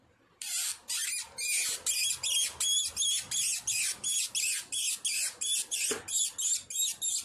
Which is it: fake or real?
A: real